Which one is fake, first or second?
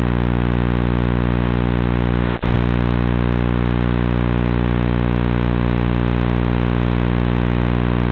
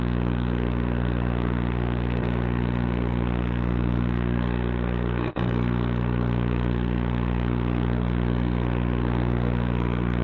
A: second